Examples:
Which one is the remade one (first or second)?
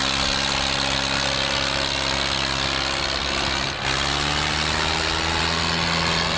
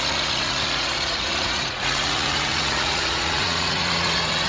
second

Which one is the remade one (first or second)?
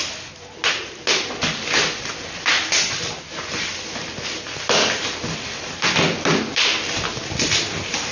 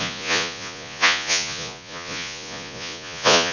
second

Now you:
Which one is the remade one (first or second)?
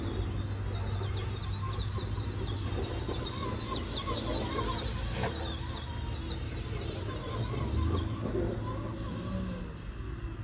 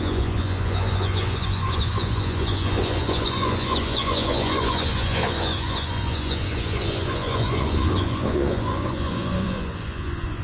second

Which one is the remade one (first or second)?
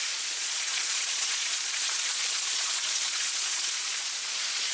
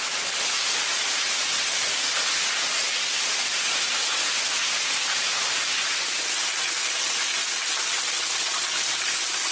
first